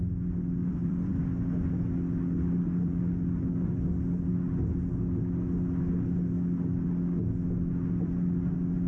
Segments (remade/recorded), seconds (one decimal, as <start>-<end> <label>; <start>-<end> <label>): 0.0-0.6 recorded; 0.6-1.2 remade; 1.2-8.9 recorded